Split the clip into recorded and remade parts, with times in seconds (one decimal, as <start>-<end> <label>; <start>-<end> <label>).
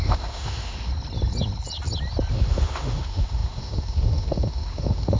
0.0-0.9 remade; 0.9-2.3 recorded; 2.3-5.2 remade